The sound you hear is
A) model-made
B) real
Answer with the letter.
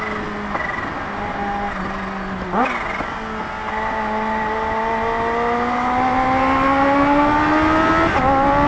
B